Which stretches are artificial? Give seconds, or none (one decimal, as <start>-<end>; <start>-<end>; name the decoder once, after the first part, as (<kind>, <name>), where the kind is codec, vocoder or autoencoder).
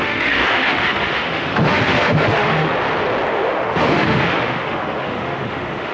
0.0-2.7 (autoencoder, DAC-VAE); 3.3-5.9